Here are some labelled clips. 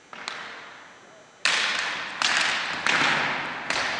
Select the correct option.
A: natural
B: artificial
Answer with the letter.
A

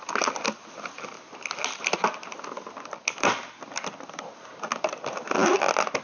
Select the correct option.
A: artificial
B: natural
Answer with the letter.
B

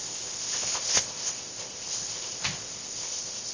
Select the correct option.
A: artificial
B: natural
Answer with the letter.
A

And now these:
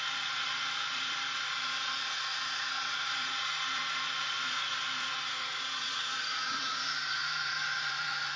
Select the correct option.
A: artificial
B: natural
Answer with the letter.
A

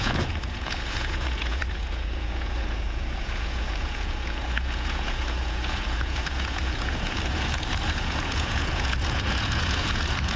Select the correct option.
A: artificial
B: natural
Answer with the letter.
A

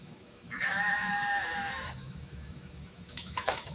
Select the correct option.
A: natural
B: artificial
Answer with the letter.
B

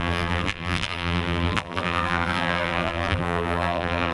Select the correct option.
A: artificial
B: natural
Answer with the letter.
A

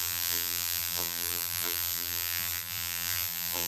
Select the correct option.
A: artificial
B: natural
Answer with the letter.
A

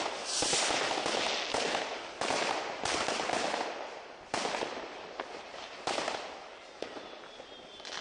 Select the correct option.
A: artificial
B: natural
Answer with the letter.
B